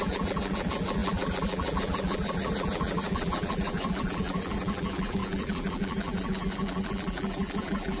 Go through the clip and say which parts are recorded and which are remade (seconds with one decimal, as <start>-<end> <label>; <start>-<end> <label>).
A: 0.0-8.0 remade